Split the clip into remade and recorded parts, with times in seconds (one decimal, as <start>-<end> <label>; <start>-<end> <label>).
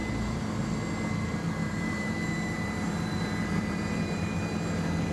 0.0-0.6 remade; 0.6-1.6 recorded; 1.6-4.4 remade; 4.4-5.1 recorded